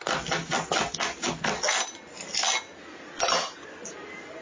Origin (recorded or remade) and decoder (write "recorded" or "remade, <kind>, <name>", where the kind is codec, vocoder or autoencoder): recorded